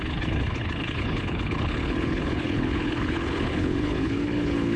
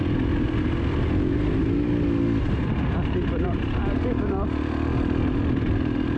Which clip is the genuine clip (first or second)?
second